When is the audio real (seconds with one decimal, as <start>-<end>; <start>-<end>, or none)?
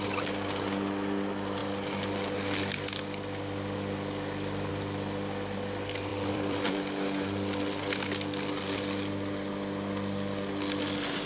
0.0-6.1; 6.8-11.3